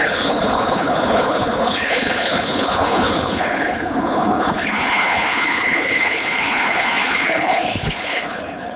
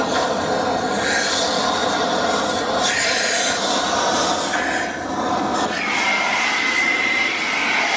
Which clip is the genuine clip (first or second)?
second